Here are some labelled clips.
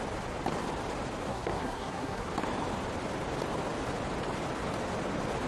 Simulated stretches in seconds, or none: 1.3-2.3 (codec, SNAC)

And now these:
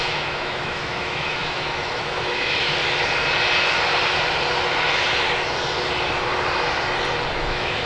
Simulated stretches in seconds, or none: 0.0-2.8 (autoencoder, DAC-VAE); 7.3-7.9

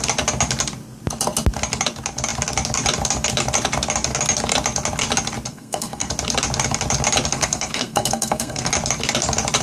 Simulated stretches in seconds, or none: 5.5-6.1 (codec, SNAC); 7.3-8.7

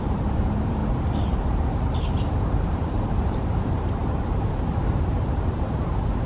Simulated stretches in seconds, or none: 0.0-0.8 (vocoder, BigVGAN v2); 2.0-6.3

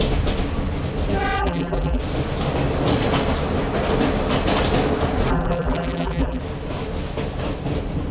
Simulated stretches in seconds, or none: 1.4-2.0 (vocoder, BigVGAN v2); 5.3-6.4